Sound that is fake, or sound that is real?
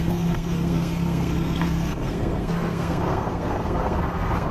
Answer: fake